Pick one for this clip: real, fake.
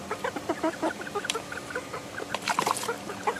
fake